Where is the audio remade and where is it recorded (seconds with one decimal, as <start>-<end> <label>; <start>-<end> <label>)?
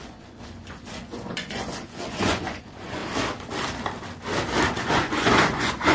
0.0-3.0 remade; 3.0-4.8 recorded; 4.8-5.9 remade